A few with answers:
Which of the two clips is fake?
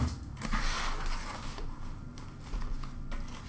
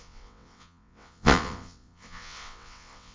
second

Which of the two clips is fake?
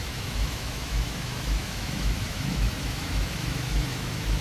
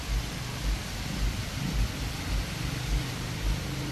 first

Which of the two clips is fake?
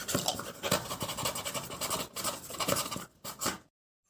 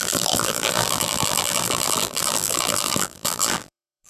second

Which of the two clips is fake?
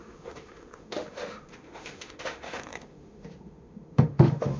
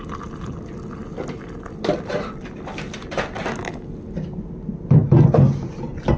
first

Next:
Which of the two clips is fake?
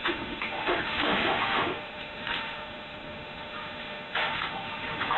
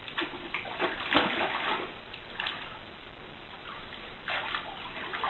first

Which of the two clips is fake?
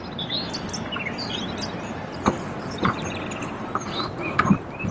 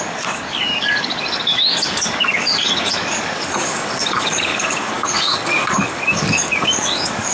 second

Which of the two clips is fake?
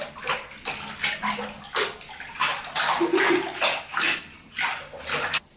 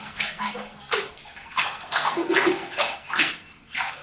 second